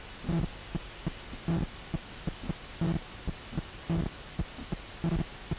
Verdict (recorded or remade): recorded